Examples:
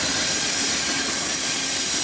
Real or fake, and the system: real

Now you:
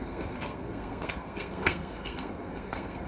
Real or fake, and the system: fake, codec, SNAC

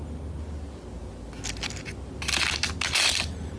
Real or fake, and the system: real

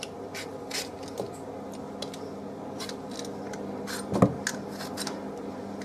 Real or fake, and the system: real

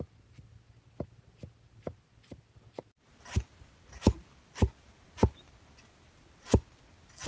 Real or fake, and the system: real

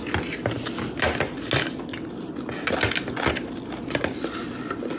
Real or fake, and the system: real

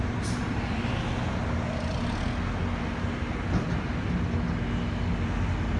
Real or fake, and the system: real